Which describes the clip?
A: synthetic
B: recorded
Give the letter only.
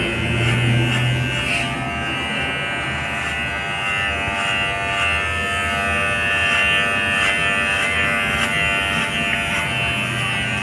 B